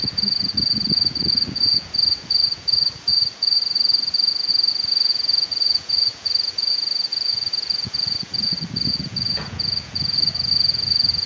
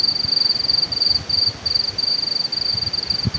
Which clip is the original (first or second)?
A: second